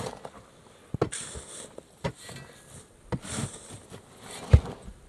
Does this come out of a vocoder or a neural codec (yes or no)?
no